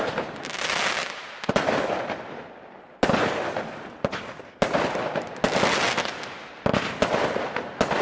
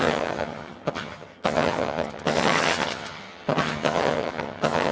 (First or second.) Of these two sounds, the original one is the first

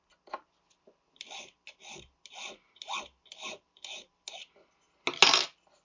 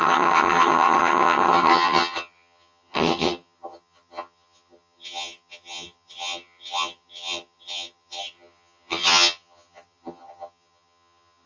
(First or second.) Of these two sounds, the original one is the first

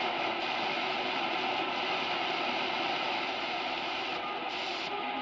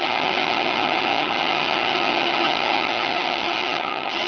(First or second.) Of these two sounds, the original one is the first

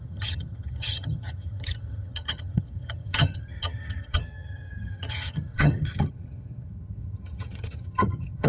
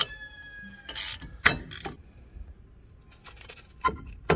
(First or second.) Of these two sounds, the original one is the second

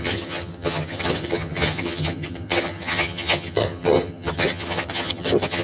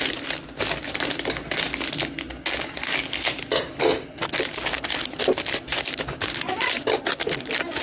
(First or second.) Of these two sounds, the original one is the second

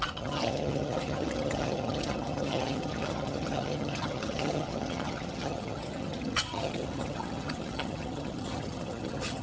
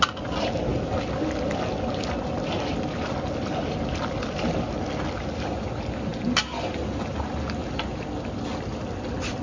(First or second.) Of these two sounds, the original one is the second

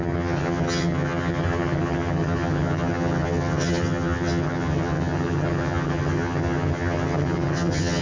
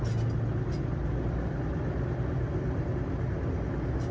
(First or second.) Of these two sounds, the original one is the second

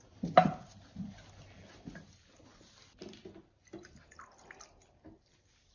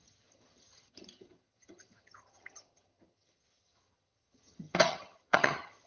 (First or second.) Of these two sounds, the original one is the first